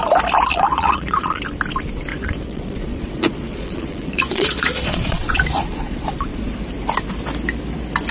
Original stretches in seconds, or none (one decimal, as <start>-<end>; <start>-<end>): 0.0-0.5; 1.4-2.1; 6.4-8.1